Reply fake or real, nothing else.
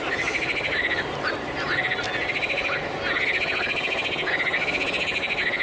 real